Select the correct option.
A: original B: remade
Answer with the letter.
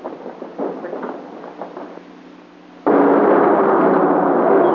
A